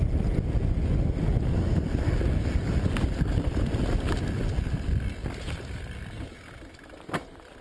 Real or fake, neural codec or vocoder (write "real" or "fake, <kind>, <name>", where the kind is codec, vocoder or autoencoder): real